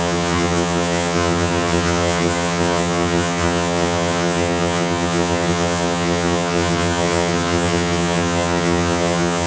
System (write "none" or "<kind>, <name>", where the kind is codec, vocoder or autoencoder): vocoder, HiFi-GAN